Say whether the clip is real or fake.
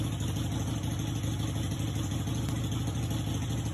real